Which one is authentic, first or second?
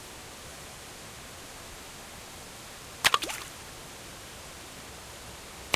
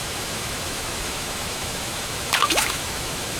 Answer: first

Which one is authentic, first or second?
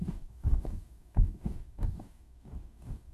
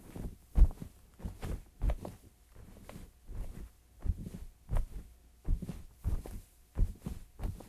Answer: second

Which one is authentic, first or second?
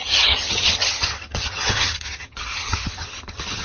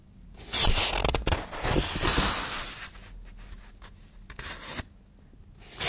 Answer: second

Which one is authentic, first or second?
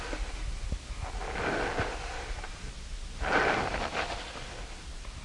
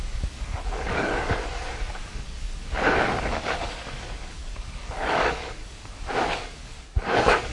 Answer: first